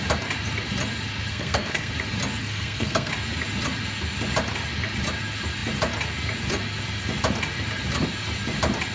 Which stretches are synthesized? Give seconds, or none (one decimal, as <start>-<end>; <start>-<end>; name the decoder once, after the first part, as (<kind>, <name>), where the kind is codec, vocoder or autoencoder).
1.3-1.9 (codec, SNAC); 2.4-3.1